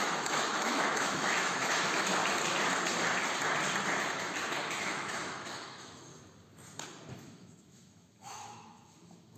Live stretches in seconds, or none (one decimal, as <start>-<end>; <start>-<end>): 2.2-4.7; 6.1-7.1